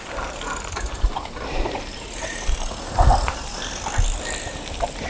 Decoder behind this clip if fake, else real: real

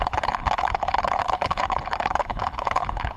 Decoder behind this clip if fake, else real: fake, codec, HILCodec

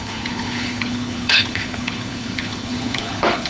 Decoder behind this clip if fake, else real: fake, codec, HILCodec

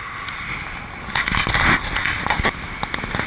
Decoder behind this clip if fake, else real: real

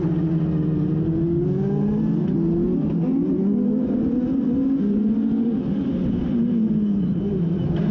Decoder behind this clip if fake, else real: real